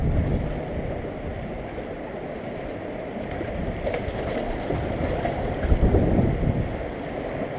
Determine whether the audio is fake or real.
real